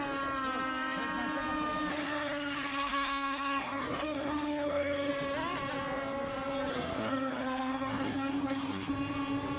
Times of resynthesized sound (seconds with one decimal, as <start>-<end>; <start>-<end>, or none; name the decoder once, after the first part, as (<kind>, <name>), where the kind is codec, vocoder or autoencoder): 1.9-5.1 (codec, SNAC); 6.7-8.9